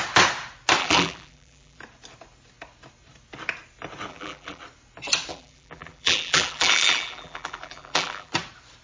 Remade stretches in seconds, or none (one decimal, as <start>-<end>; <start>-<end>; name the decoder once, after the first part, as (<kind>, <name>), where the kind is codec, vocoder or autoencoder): 0.8-1.8 (vocoder, BigVGAN v2); 4.1-4.6; 5.3-8.3